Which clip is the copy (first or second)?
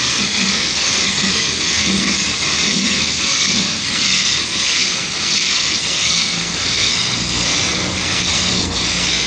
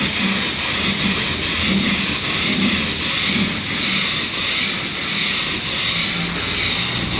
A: first